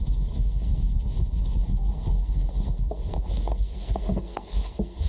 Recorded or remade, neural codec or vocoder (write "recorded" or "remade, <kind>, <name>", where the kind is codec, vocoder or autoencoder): remade, codec, SNAC